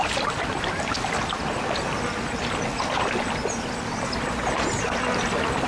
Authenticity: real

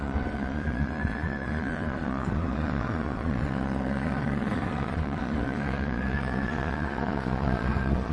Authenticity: fake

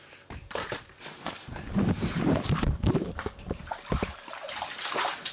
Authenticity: fake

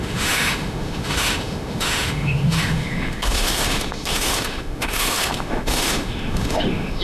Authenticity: fake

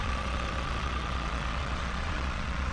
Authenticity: fake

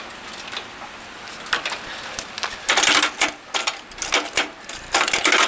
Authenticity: real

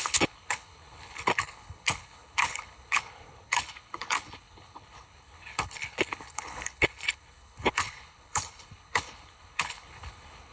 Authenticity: fake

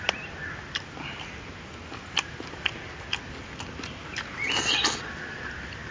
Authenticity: real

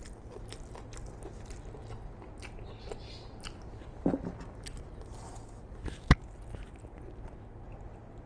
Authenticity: real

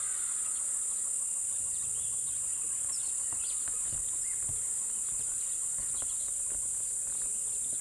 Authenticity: real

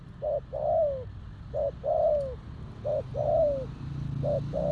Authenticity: real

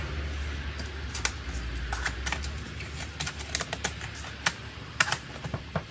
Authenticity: real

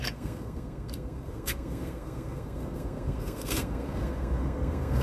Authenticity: fake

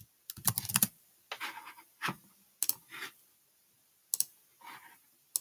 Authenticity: real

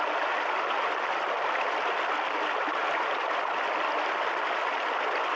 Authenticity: real